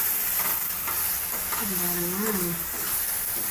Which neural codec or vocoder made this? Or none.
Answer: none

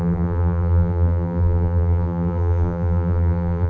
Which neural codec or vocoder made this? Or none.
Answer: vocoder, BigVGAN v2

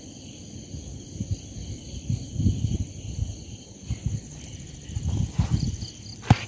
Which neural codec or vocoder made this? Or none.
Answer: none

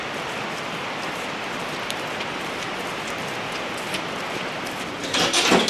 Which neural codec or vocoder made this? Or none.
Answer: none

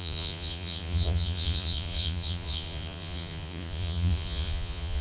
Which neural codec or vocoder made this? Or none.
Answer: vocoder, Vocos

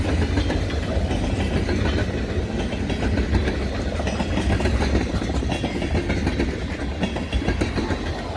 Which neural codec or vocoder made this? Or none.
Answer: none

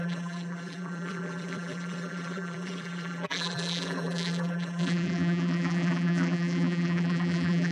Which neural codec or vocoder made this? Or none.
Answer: vocoder, BigVGAN v2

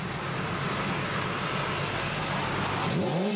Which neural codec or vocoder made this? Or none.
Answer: none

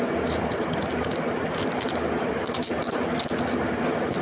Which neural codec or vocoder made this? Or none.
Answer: none